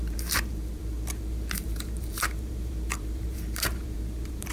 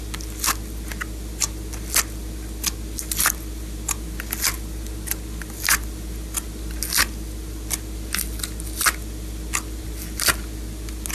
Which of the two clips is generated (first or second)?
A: first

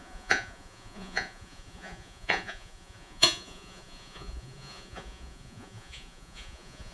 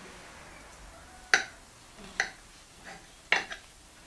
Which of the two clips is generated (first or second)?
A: first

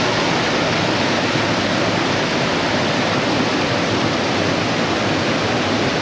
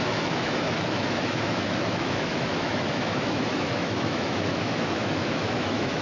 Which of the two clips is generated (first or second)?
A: second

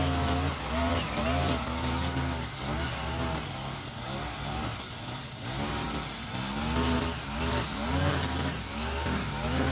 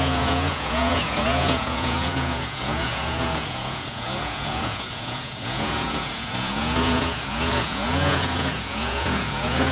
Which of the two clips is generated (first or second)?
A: second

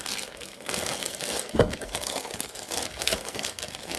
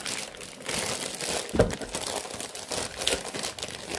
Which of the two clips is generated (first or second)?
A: first